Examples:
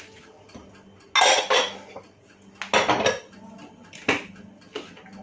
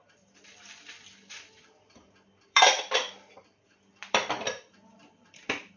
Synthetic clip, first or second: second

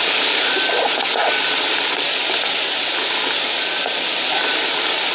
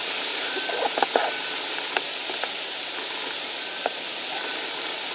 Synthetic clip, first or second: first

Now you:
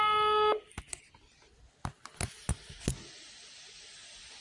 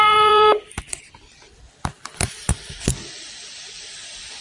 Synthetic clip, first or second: second